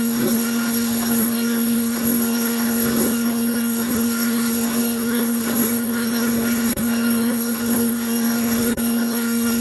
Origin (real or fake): fake